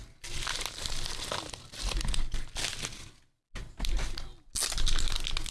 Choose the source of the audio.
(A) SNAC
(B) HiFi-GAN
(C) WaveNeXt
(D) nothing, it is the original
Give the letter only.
D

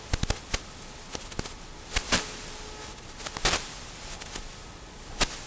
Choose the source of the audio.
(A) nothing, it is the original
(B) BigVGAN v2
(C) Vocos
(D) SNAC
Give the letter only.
A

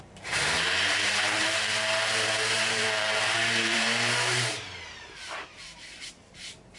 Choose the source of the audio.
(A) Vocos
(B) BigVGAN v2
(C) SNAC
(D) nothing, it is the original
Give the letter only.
B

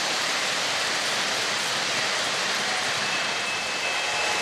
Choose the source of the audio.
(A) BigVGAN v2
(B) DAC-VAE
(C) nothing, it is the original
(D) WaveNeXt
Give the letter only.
A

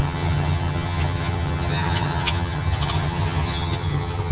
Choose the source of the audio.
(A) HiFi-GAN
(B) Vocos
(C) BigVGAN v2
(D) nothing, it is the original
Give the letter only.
A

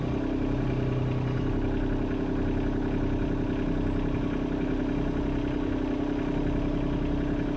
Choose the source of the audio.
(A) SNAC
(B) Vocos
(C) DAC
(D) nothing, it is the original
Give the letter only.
D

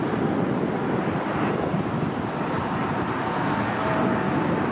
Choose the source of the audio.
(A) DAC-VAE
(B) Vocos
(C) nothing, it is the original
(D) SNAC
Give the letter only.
C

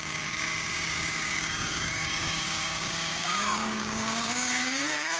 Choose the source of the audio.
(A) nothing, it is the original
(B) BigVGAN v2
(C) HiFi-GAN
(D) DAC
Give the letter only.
D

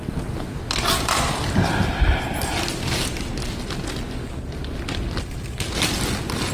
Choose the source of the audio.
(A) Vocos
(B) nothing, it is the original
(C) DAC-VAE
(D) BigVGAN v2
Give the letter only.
B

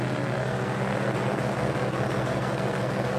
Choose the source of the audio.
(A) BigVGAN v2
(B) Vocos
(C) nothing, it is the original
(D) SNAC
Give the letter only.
D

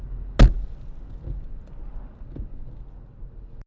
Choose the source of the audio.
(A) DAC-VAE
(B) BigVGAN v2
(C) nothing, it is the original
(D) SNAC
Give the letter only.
C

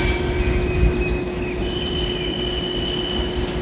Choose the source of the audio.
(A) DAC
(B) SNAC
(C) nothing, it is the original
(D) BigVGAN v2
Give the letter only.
C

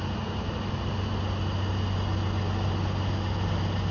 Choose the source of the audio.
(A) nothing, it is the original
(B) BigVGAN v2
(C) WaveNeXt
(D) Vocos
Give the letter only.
A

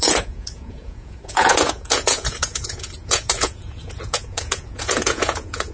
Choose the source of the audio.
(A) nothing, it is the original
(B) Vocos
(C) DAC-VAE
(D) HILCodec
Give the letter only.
B